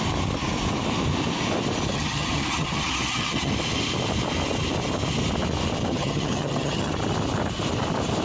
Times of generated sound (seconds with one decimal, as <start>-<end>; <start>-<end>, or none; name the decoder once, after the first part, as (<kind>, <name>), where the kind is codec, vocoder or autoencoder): 1.9-3.5 (vocoder, HiFi-GAN); 5.9-6.9